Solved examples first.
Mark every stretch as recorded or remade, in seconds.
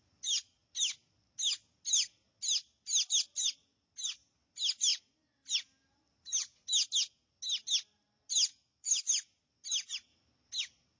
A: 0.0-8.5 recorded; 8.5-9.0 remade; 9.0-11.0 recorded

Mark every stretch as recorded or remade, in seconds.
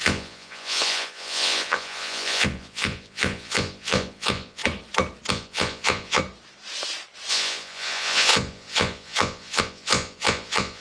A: 0.0-4.6 remade; 4.6-5.3 recorded; 5.3-6.2 remade; 6.2-7.3 recorded; 7.3-10.8 remade